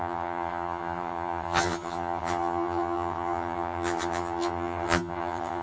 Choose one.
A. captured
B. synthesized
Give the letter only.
B